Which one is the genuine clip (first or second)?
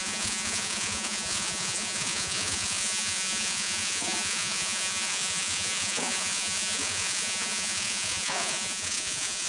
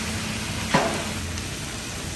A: second